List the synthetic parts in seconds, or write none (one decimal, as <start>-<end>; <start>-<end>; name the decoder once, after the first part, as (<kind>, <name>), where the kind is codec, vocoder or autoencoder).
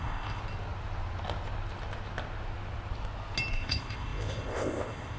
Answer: 0.0-0.4 (codec, ZipCodec); 3.5-5.2